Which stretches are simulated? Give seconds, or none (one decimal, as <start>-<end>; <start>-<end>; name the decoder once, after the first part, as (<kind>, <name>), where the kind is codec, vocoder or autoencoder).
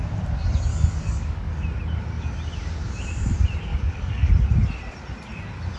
0.7-1.5 (codec, DAC); 3.7-4.3